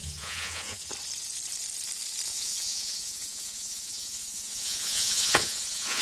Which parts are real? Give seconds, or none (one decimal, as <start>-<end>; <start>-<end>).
0.9-2.3